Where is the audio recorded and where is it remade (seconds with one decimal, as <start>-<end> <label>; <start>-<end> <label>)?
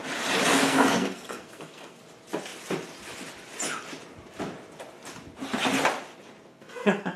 0.0-0.5 recorded; 0.5-2.0 remade; 2.0-6.5 recorded; 6.5-7.2 remade